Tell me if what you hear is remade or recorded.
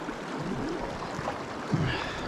recorded